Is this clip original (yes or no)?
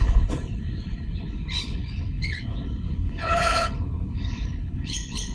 no